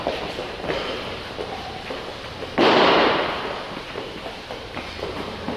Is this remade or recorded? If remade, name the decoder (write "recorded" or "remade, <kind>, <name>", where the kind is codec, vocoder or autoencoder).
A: remade, vocoder, BigVGAN v2